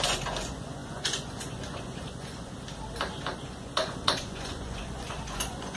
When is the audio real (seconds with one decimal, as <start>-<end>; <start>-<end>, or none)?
2.5-3.4